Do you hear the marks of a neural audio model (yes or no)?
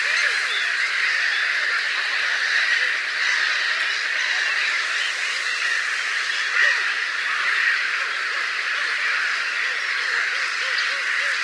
no